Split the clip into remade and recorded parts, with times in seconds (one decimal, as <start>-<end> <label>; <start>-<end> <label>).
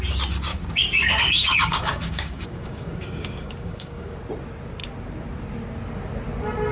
0.0-0.5 recorded; 0.5-4.2 remade; 4.2-6.7 recorded